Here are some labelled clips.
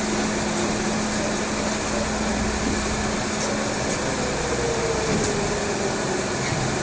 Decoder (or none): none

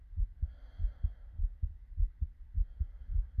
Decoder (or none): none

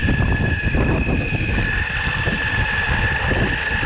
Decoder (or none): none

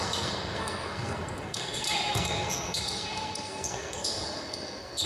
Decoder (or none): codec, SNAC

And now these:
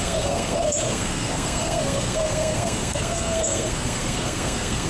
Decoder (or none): codec, SNAC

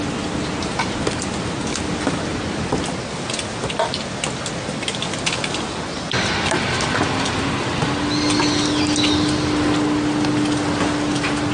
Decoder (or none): none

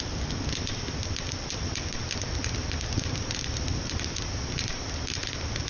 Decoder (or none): none